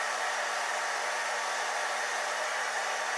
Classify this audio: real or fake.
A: real